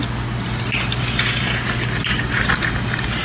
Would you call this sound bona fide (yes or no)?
yes